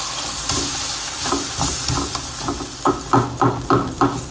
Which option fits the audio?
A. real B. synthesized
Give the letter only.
A